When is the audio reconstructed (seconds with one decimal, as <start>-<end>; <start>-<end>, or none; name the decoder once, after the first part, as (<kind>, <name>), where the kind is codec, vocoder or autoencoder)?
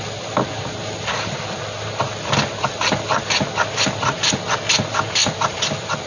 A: 5.2-6.1 (vocoder, BigVGAN v2)